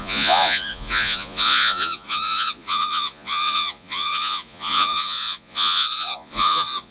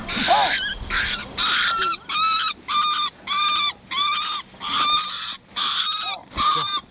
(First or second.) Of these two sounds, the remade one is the first